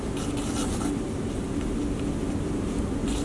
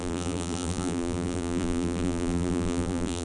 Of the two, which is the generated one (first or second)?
second